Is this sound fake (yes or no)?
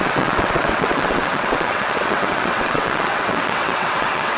yes